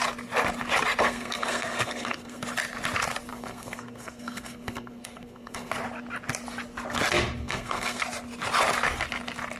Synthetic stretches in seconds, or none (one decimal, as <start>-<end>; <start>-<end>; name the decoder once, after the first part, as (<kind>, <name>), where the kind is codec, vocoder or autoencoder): 1.0-2.4 (codec, SNAC); 3.3-5.7; 7.4-8.0